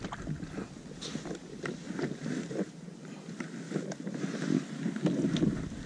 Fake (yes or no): no